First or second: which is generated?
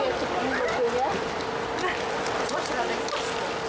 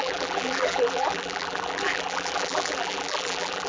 second